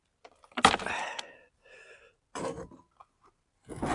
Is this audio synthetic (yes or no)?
no